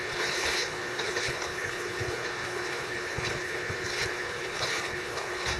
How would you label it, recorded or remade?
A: remade